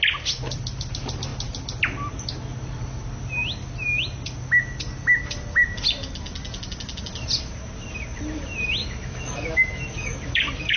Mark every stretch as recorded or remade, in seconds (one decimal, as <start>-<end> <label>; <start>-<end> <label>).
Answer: 0.0-8.8 recorded; 8.8-10.8 remade